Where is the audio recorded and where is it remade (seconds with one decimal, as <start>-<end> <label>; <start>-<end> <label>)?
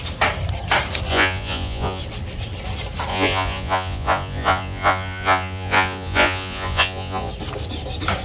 0.0-1.1 recorded; 1.1-2.0 remade; 2.0-3.1 recorded; 3.1-7.3 remade; 7.3-8.2 recorded